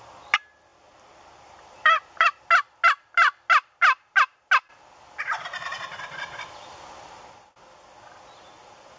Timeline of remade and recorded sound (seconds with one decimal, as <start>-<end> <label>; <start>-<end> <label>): 0.0-0.7 recorded; 0.7-2.4 remade; 2.4-9.0 recorded